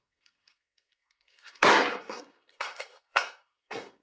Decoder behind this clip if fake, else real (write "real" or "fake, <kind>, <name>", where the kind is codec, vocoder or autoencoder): fake, codec, SNAC